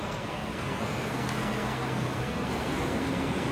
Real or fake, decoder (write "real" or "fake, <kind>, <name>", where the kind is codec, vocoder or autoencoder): fake, codec, SNAC